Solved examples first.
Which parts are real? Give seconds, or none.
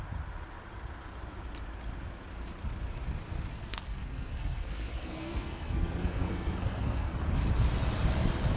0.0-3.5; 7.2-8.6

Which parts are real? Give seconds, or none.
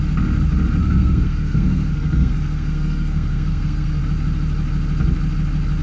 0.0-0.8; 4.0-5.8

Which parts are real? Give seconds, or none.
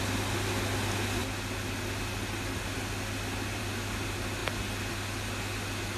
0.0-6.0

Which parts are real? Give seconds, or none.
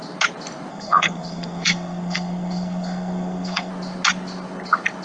0.0-0.7; 3.7-5.0